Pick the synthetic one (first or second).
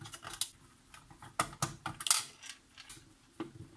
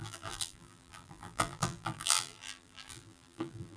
second